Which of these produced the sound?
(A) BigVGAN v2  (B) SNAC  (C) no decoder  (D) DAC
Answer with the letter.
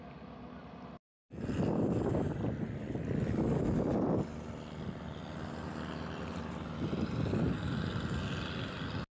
C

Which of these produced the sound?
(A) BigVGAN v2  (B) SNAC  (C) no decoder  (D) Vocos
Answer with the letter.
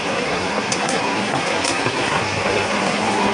B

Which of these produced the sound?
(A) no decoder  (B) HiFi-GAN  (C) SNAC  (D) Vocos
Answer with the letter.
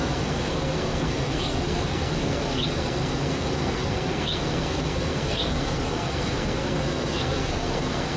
C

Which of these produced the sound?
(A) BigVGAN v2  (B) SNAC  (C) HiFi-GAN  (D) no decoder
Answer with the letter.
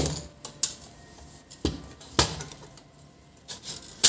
D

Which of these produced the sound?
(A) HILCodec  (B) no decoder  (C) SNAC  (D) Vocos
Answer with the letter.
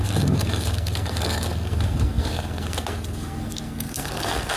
C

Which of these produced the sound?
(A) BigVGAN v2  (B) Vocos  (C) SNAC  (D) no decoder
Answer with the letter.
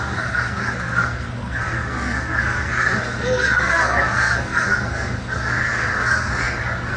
C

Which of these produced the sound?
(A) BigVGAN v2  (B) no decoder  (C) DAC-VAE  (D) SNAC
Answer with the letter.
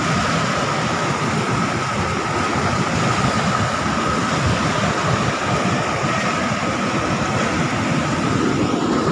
B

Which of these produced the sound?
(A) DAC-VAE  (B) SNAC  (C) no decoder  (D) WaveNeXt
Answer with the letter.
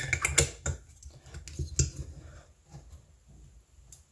C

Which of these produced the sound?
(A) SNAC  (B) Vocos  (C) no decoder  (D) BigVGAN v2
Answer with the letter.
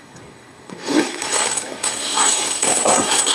A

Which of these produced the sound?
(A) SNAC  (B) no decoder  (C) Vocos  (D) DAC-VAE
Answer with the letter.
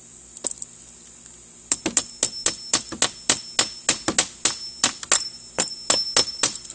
B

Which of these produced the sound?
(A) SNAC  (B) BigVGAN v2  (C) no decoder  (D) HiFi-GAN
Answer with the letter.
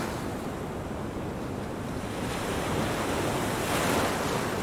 C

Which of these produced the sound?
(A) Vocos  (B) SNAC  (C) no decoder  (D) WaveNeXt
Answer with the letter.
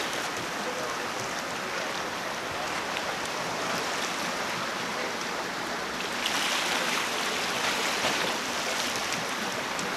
C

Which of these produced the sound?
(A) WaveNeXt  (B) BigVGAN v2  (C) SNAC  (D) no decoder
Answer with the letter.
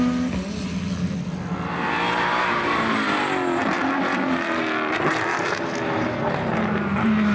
D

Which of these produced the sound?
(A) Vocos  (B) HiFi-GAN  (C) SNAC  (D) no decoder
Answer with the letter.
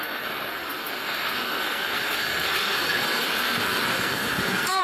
C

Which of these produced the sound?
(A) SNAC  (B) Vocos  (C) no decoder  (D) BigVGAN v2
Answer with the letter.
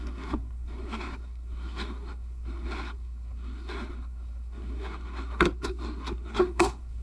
A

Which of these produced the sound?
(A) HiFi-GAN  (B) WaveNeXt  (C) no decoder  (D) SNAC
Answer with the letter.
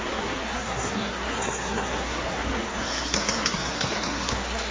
D